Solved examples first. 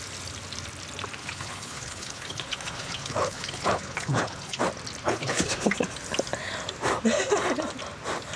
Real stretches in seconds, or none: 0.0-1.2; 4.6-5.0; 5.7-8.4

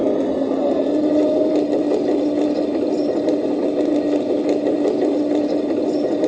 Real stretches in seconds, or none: 0.0-6.3

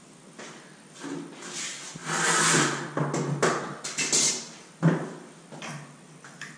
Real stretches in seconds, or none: 0.0-6.6